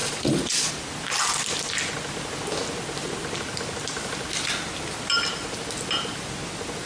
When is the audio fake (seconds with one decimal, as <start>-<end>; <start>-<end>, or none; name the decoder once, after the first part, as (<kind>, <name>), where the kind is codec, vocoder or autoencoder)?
0.0-0.7 (vocoder, Vocos)